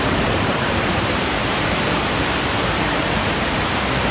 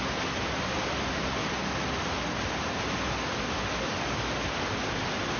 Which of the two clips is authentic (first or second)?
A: second